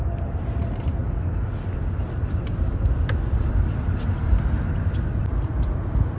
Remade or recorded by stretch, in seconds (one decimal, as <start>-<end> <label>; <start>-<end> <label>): 0.0-6.2 recorded